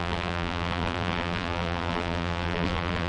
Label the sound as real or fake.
fake